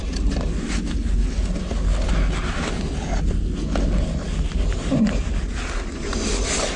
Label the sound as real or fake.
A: real